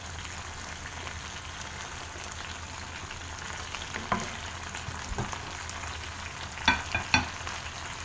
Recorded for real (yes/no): yes